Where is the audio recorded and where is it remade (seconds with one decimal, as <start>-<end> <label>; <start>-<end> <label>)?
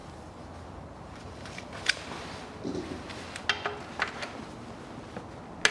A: 0.0-3.4 remade; 3.4-5.7 recorded